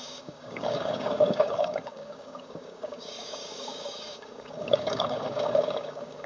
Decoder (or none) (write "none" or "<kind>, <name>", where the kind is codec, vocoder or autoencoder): codec, DAC